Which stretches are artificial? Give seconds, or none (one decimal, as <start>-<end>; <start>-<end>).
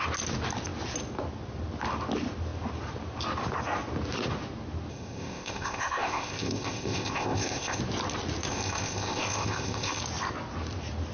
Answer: 4.9-7.8; 8.5-10.0